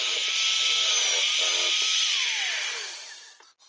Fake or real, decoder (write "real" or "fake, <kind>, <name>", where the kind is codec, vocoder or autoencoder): real